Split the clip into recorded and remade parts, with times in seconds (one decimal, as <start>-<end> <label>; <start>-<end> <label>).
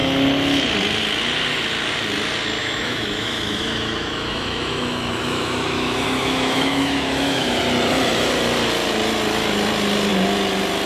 0.0-2.6 recorded; 2.6-7.6 remade; 7.6-10.9 recorded